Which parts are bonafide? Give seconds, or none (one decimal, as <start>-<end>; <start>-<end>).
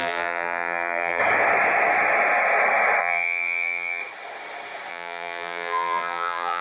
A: 1.2-3.0; 4.0-4.9